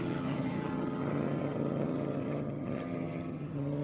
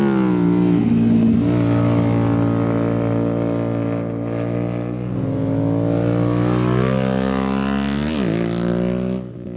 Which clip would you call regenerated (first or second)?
first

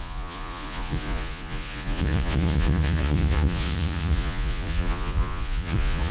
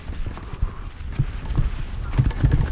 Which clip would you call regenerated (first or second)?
first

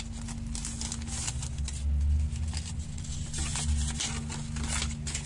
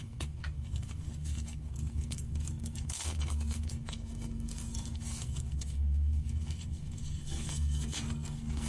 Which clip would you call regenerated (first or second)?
second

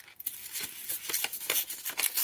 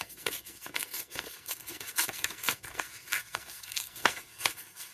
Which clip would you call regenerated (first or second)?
second